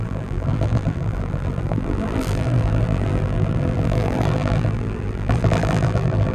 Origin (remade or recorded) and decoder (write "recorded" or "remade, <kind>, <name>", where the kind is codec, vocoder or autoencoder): remade, vocoder, BigVGAN v2